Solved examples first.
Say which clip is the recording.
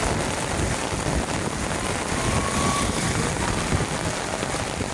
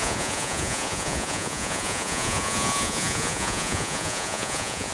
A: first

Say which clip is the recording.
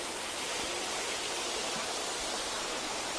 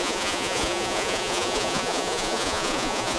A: first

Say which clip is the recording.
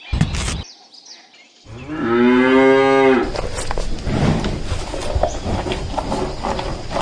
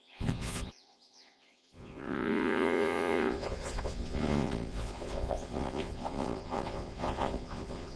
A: first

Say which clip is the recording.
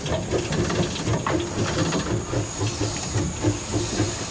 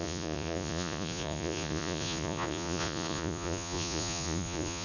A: first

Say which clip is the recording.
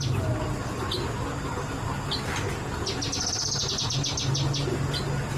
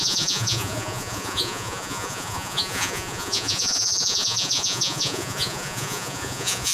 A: first